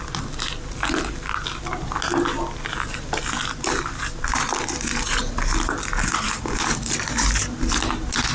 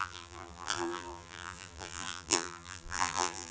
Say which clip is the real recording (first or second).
first